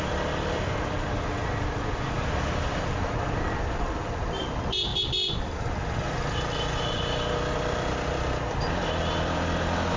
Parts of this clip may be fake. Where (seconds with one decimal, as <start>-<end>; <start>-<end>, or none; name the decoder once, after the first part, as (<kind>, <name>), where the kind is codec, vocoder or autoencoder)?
none